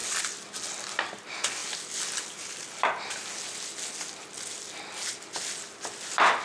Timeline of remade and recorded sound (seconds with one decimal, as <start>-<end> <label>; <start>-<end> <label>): 0.0-6.4 recorded

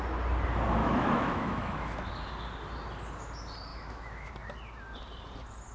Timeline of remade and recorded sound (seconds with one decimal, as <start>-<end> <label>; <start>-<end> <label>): 0.0-0.8 recorded; 0.8-2.1 remade; 2.1-3.7 recorded; 3.7-4.3 remade; 4.3-5.7 recorded

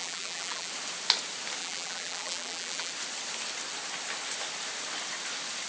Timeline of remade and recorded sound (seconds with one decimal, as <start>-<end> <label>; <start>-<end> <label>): 0.0-0.7 remade; 0.7-1.6 recorded; 1.6-2.9 remade; 2.9-5.7 recorded

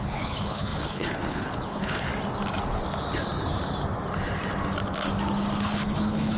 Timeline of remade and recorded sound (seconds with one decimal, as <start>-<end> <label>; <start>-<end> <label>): 0.0-2.1 remade; 2.1-5.6 recorded; 5.6-6.4 remade